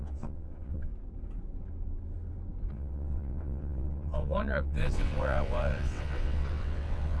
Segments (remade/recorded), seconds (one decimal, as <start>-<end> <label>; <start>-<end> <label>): 0.0-0.9 remade; 0.9-2.7 recorded; 2.7-7.2 remade